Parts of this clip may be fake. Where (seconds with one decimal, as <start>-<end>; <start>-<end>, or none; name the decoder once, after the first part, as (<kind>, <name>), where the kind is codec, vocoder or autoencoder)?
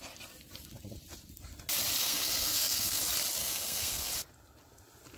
2.0-3.0 (codec, SNAC); 3.4-4.1